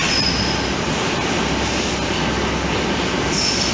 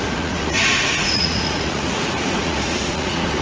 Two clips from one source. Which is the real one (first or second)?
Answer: first